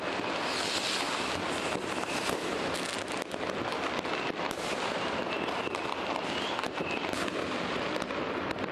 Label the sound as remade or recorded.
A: recorded